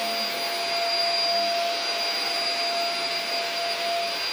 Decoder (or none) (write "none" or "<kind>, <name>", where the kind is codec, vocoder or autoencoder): none